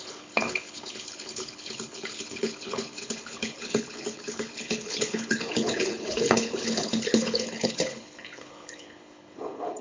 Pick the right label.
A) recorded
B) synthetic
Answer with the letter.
B